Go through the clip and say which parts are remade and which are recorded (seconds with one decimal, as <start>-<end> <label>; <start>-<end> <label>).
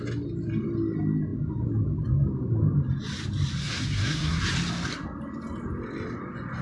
0.0-3.6 recorded; 3.6-4.4 remade; 4.4-6.6 recorded